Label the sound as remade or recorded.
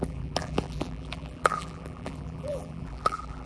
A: remade